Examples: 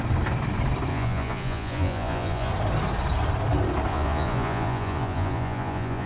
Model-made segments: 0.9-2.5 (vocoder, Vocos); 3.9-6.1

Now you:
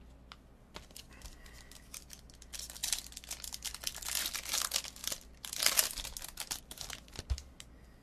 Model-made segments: none

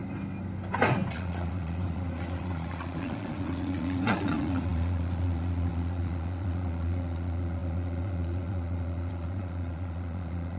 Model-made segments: 1.1-10.6 (vocoder, Vocos)

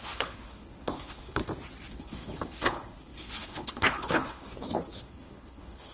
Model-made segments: 0.0-1.4 (codec, HILCodec); 1.9-5.9

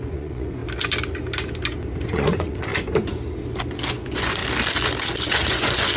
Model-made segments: 0.0-0.6 (vocoder, Vocos); 2.1-2.7; 3.9-4.4; 5.3-6.0